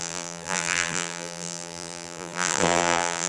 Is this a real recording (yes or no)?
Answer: no